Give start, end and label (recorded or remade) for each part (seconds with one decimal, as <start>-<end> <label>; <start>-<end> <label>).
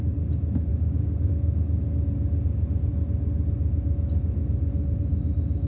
0.0-0.7 recorded; 0.7-1.3 remade; 1.3-5.7 recorded